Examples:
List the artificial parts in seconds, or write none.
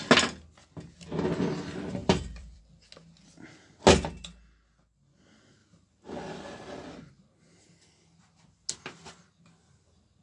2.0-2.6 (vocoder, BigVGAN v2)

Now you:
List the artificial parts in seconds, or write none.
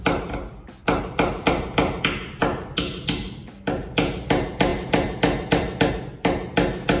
0.8-2.0 (vocoder, BigVGAN v2)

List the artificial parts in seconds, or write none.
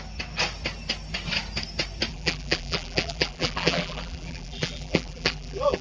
2.1-5.8 (vocoder, BigVGAN v2)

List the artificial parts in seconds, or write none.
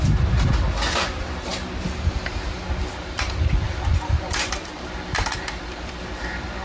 2.8-6.1 (vocoder, BigVGAN v2)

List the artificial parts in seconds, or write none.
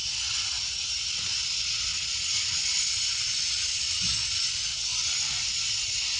none